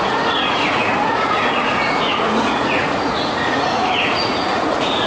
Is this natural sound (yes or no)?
no